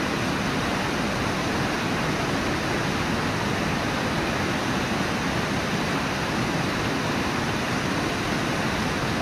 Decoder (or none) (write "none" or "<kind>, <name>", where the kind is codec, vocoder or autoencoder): none